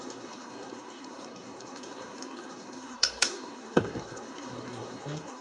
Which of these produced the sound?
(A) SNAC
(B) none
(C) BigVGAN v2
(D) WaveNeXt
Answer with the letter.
A